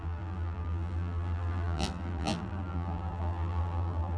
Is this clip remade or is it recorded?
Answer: remade